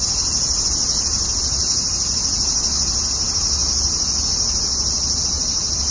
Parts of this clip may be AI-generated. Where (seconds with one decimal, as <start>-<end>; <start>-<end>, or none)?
none